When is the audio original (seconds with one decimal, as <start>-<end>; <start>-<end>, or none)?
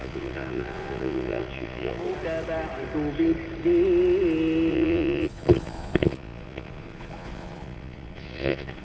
2.0-4.7